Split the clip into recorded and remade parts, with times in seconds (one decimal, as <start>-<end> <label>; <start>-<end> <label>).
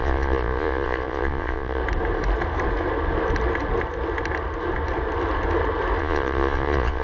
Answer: 0.0-1.8 remade; 1.8-6.0 recorded; 6.0-7.0 remade